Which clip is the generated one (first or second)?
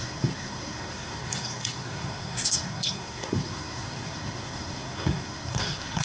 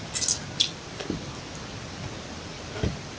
first